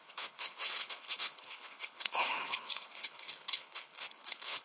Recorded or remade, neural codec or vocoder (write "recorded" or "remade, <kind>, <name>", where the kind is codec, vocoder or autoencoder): remade, codec, HILCodec